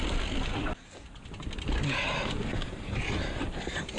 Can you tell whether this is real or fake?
real